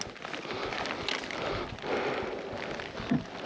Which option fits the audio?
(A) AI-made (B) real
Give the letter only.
B